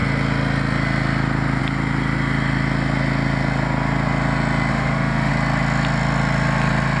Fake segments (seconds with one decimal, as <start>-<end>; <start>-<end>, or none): 4.7-5.3